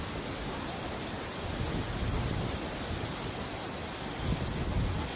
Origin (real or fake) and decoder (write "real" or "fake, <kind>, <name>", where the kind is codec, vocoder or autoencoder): real